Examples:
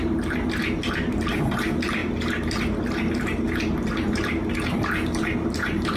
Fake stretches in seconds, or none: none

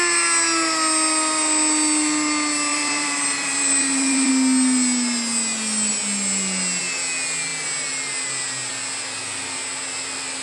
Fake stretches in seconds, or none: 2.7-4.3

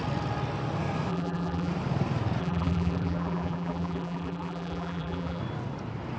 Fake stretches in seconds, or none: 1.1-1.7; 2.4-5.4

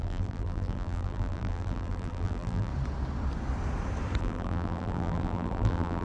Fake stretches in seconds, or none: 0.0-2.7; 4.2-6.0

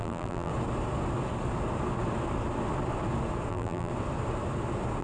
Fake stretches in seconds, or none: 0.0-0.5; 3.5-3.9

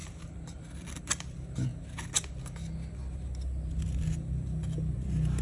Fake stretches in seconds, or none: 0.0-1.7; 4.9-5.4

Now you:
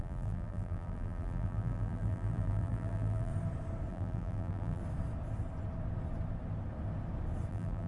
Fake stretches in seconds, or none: 0.0-3.3; 3.9-4.8; 7.5-7.9